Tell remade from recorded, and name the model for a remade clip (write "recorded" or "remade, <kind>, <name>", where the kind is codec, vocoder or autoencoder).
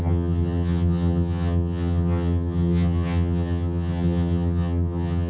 remade, vocoder, HiFi-GAN